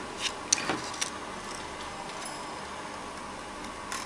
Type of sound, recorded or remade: recorded